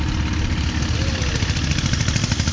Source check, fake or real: real